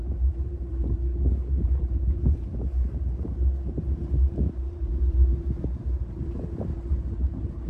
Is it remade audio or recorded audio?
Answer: remade